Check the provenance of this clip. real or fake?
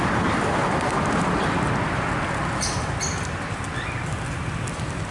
real